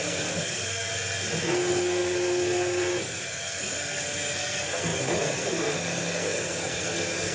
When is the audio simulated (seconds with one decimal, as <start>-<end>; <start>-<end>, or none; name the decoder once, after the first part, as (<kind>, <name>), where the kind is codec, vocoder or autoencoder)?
0.0-0.9 (codec, SNAC); 1.4-7.3